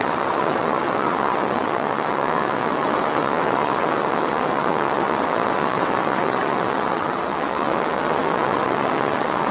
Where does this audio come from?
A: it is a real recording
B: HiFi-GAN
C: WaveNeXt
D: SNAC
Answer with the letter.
C